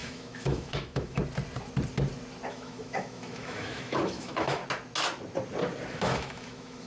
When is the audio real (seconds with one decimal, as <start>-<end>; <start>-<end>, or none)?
1.2-2.5; 4.6-5.9